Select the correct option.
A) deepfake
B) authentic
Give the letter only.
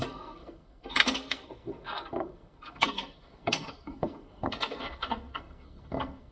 A